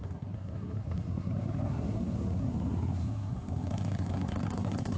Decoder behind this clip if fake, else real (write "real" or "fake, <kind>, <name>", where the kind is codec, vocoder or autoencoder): fake, codec, SNAC